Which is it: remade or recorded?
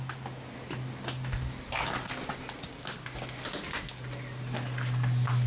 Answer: recorded